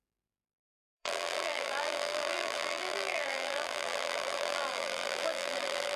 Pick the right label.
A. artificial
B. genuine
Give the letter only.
A